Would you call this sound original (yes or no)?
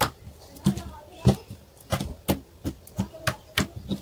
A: yes